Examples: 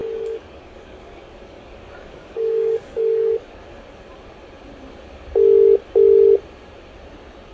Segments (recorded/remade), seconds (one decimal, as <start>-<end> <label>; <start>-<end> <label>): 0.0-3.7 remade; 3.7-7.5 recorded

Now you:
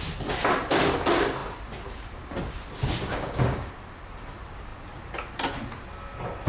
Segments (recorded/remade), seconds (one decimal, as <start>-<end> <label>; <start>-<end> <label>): 0.0-3.1 recorded; 3.1-3.7 remade; 3.7-6.5 recorded

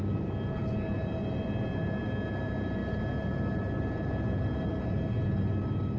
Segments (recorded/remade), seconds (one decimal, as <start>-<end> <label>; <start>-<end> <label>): 0.0-6.0 recorded

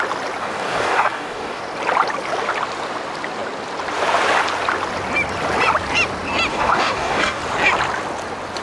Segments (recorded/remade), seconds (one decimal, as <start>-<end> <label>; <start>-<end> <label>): 0.0-0.4 recorded; 0.4-1.6 remade; 1.6-6.5 recorded; 6.5-7.4 remade; 7.4-8.6 recorded